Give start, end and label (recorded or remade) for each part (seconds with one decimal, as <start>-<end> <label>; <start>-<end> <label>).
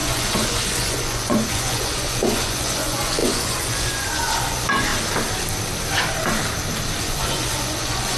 0.0-4.9 remade; 4.9-7.0 recorded; 7.0-8.2 remade